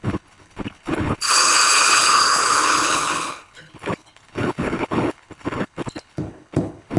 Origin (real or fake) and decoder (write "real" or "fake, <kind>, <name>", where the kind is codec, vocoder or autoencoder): fake, codec, HILCodec